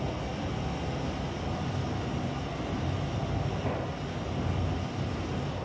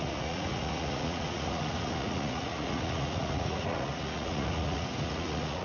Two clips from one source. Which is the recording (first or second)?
first